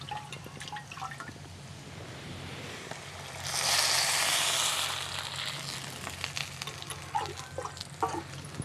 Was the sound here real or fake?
real